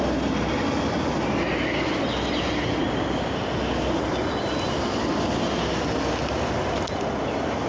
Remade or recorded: recorded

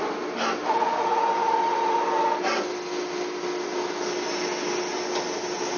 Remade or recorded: recorded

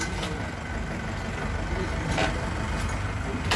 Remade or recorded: recorded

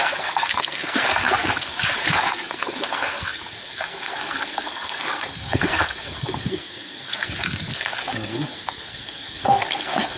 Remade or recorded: remade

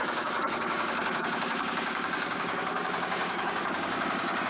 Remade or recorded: remade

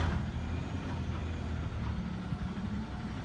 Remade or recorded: recorded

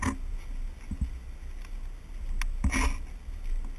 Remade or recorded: recorded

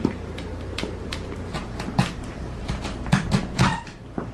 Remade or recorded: remade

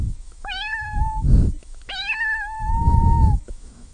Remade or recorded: remade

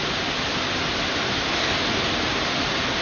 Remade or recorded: recorded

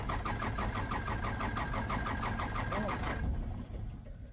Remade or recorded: recorded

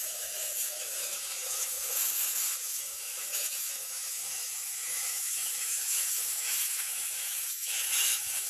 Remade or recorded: remade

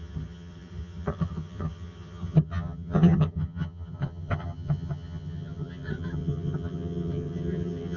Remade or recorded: remade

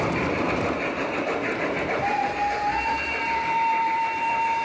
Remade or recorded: remade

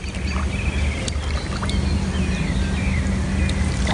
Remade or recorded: recorded